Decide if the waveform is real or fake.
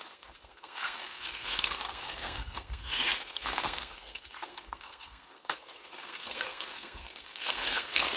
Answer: fake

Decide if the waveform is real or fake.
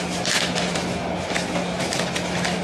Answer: real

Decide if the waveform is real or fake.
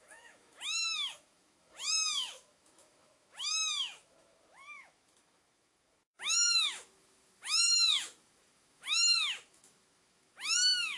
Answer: fake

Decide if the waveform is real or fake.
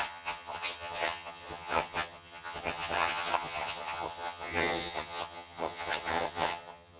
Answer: fake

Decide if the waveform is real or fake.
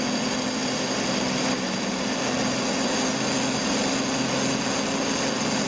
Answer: real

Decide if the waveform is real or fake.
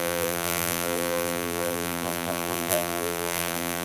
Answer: fake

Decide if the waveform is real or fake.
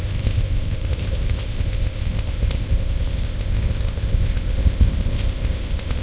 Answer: fake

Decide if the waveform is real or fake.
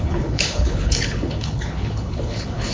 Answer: fake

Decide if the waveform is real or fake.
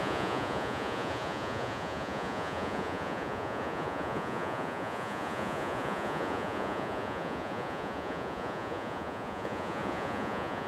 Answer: fake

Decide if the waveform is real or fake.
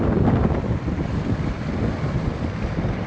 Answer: real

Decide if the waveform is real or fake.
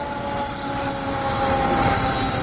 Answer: real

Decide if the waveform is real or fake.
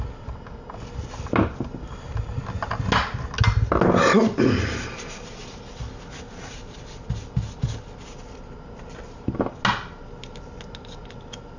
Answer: real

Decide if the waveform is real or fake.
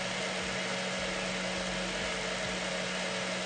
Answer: real